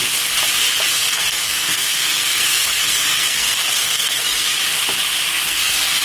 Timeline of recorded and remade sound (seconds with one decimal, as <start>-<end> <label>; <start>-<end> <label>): 0.0-0.9 recorded; 0.9-4.5 remade; 4.5-5.3 recorded; 5.3-6.0 remade